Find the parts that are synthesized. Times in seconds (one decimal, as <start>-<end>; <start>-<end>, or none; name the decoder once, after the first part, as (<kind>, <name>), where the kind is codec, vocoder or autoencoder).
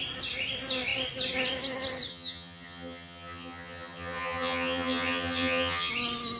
2.1-5.9 (vocoder, HiFi-GAN)